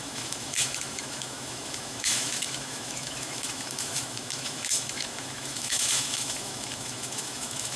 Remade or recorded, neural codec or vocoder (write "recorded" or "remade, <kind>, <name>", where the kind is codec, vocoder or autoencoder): remade, autoencoder, DAC-VAE